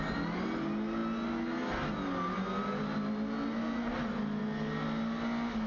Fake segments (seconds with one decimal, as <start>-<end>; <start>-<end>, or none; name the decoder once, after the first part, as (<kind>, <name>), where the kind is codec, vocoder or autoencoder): none